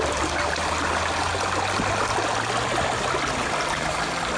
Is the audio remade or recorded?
recorded